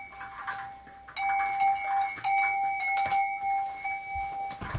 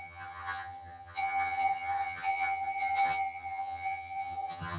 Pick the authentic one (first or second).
first